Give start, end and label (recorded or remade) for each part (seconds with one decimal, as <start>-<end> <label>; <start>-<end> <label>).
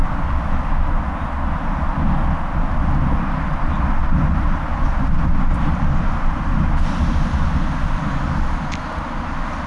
0.0-9.7 recorded